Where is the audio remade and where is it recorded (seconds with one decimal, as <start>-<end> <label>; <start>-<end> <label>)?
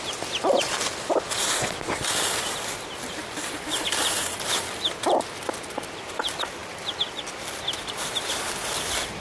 0.0-9.2 remade